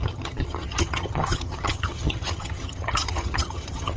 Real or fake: fake